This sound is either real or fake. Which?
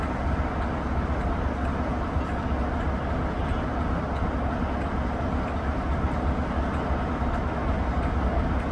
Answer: real